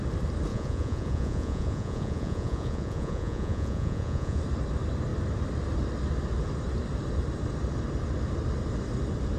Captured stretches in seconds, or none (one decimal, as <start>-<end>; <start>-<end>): 0.0-0.5; 4.4-9.4